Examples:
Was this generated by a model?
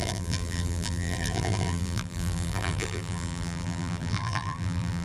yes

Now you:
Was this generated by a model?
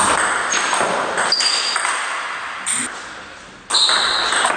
no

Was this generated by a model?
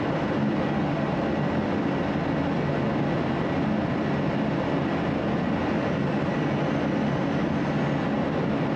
no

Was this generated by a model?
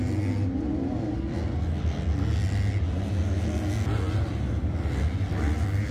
no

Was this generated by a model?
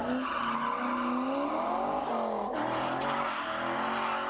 no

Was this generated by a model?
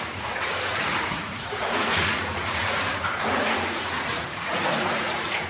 yes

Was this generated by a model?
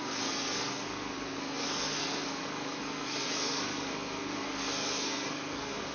yes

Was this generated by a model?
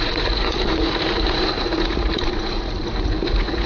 yes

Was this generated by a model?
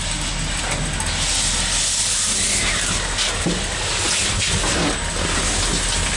no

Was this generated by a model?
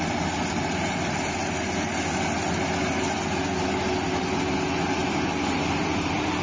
no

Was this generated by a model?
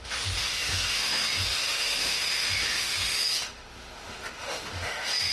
yes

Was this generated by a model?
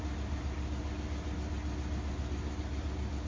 no